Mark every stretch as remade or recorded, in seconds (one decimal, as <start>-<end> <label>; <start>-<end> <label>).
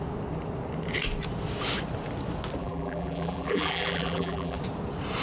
0.0-2.6 recorded; 2.6-4.6 remade; 4.6-5.2 recorded